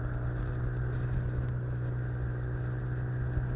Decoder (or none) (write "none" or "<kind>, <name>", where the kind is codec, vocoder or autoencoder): none